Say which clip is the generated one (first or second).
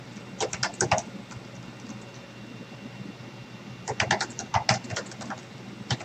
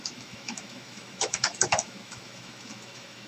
second